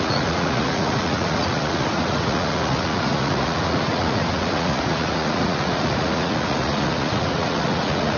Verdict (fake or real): fake